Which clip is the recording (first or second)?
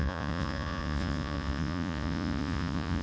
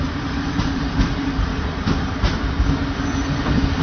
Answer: second